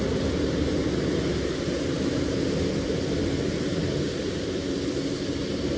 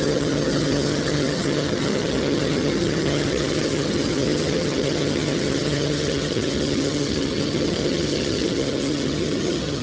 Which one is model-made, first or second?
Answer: second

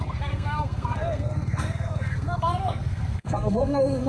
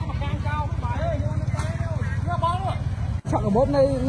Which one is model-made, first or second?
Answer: first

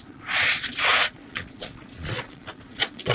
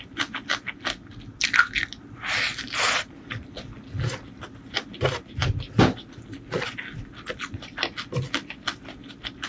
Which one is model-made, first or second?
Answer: first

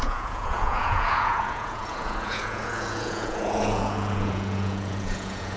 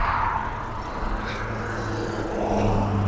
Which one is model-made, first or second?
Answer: first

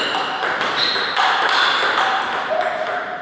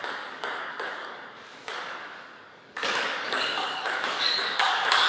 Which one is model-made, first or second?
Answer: second